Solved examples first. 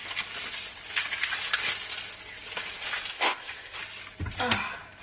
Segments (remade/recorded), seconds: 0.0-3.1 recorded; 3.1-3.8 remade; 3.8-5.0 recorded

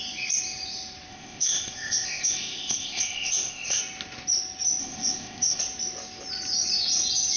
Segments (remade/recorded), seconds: 0.0-1.1 recorded; 1.1-3.8 remade; 3.8-4.8 recorded; 4.8-5.6 remade; 5.6-7.4 recorded

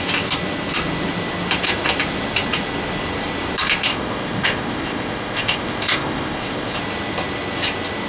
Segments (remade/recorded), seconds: 0.0-3.9 recorded; 3.9-6.8 remade; 6.8-8.1 recorded

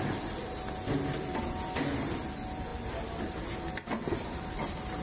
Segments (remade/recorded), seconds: 0.0-5.0 recorded

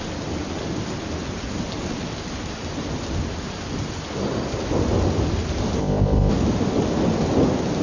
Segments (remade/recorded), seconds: 0.0-5.8 recorded; 5.8-6.3 remade; 6.3-7.8 recorded

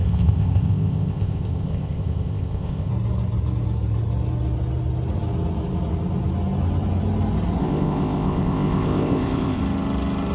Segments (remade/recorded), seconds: 0.0-2.9 remade; 2.9-7.6 recorded; 7.6-9.6 remade; 9.6-10.3 recorded